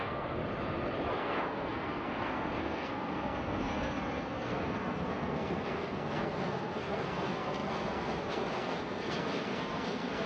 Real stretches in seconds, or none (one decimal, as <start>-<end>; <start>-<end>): 0.4-1.1